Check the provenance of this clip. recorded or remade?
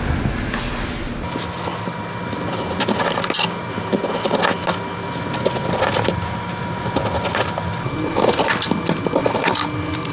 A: recorded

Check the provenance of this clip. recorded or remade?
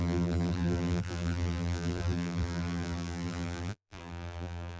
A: remade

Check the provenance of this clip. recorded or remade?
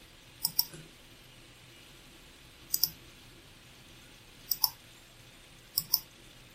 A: remade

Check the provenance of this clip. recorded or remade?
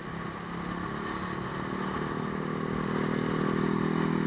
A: recorded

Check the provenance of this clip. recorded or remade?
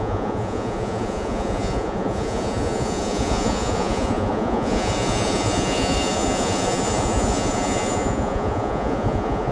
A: remade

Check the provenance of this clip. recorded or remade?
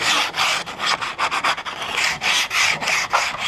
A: recorded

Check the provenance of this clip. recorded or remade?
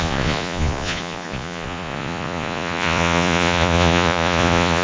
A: remade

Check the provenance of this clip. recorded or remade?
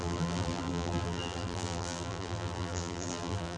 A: remade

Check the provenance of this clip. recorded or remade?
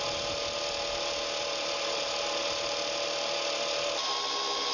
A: recorded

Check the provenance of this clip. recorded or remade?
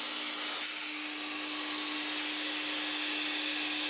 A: recorded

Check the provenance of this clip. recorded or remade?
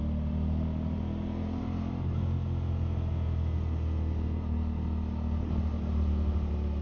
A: recorded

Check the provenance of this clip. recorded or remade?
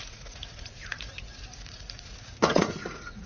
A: remade